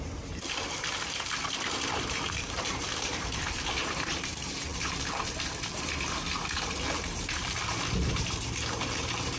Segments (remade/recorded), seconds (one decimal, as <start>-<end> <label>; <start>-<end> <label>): 0.0-9.4 remade